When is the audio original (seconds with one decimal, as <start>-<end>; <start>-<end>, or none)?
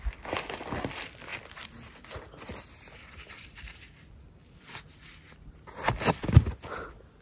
0.0-7.2